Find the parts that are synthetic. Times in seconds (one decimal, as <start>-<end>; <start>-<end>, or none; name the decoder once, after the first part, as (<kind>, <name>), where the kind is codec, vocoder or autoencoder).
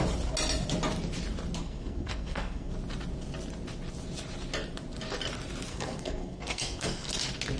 1.6-2.7 (codec, SNAC); 5.7-7.1